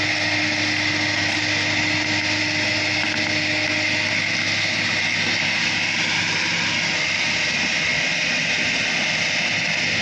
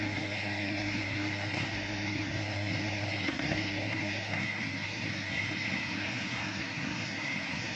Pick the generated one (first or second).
second